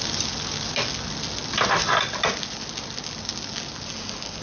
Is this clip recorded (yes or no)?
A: yes